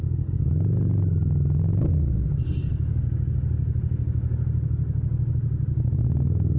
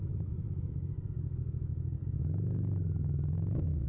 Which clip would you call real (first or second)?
first